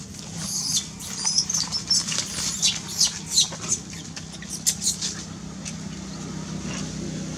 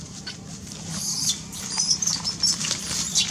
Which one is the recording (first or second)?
first